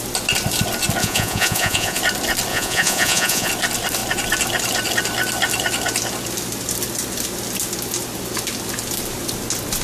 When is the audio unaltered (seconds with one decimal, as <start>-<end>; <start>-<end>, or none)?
0.0-1.0; 2.0-2.5; 3.5-9.8